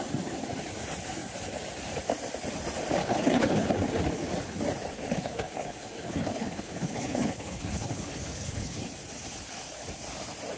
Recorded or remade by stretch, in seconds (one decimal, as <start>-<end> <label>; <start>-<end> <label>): 0.0-3.0 recorded; 3.0-3.7 remade; 3.7-4.9 recorded; 4.9-8.8 remade; 8.8-10.6 recorded

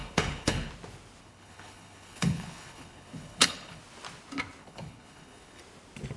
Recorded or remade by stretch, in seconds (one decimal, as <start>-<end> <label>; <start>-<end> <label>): 0.0-0.7 remade; 0.7-1.2 recorded; 1.2-3.8 remade; 3.8-4.6 recorded; 4.6-5.6 remade; 5.6-6.2 recorded

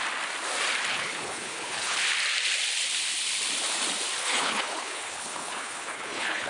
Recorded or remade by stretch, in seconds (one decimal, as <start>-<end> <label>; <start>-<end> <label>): 0.0-0.9 recorded; 0.9-2.0 remade; 2.0-4.2 recorded; 4.2-6.5 remade

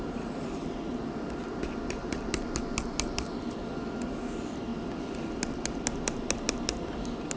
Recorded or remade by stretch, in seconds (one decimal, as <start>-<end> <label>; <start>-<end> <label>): 0.0-7.4 recorded

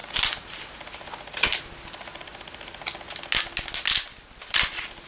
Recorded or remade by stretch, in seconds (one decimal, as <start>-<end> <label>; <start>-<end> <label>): 0.0-5.1 recorded

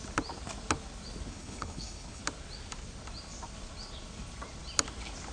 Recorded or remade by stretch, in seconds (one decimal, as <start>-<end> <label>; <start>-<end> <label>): 0.0-1.3 recorded; 1.3-2.2 remade; 2.2-5.3 recorded